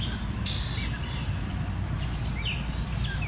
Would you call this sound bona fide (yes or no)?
yes